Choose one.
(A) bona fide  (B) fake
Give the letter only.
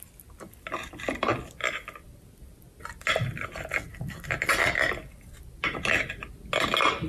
A